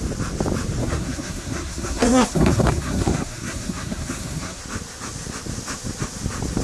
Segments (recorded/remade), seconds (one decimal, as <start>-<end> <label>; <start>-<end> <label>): 0.0-0.8 recorded; 0.8-4.6 remade; 4.6-6.6 recorded